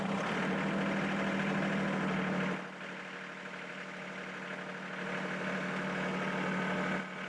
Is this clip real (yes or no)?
yes